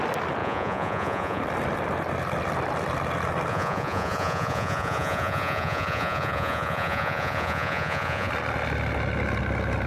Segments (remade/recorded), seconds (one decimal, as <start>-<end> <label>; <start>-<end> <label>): 0.0-0.4 recorded; 0.4-1.4 remade; 1.4-3.5 recorded; 3.5-8.3 remade; 8.3-9.9 recorded